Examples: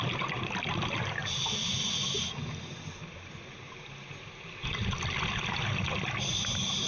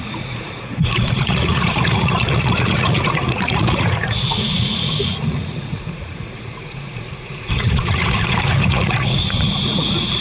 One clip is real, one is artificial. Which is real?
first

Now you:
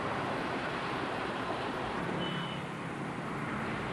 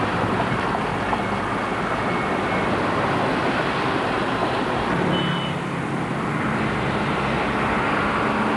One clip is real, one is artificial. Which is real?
second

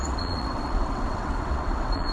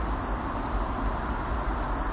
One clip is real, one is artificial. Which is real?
second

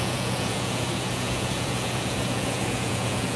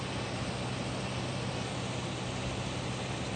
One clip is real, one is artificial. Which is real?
second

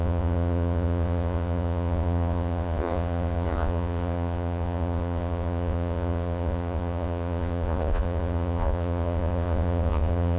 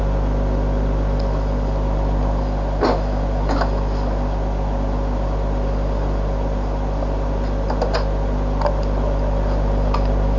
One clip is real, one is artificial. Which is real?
second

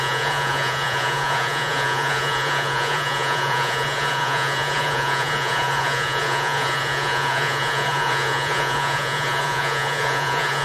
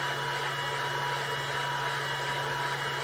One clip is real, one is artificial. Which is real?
second